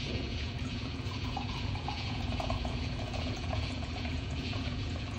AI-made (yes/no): yes